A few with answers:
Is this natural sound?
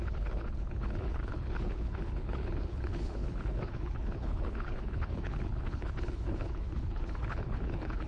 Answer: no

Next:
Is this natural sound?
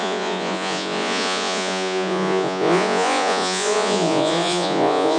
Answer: no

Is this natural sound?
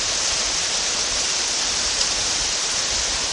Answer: yes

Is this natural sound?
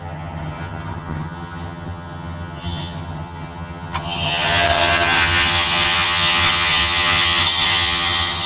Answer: no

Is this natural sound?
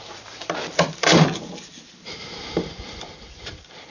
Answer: no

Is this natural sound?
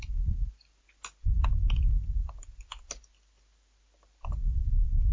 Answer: yes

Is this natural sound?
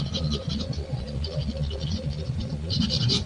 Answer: no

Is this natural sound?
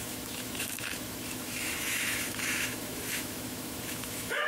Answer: no